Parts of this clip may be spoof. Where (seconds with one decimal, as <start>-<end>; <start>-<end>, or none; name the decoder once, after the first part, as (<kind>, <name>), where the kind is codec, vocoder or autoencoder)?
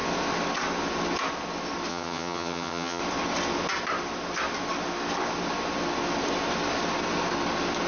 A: 1.9-3.0 (vocoder, HiFi-GAN)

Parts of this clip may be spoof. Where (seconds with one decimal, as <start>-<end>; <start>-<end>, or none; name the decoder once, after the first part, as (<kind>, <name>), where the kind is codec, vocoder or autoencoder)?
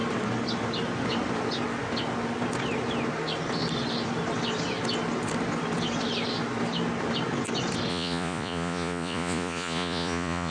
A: 7.9-10.5 (vocoder, Vocos)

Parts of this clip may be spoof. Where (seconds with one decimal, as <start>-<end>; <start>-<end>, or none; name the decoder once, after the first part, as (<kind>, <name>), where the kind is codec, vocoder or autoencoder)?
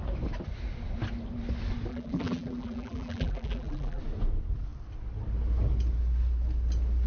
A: 1.9-4.0 (vocoder, BigVGAN v2)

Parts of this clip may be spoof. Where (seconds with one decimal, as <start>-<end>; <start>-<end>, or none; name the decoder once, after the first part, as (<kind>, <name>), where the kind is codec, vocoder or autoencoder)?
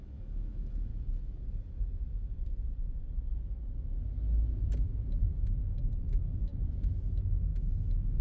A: 0.0-0.9 (autoencoder, DAC-VAE); 5.6-6.5; 7.1-8.2